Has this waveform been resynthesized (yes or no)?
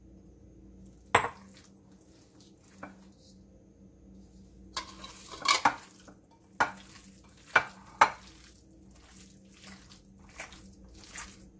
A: no